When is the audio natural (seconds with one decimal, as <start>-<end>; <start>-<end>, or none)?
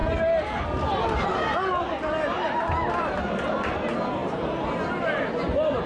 0.0-5.9